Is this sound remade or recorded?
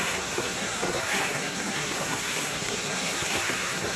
remade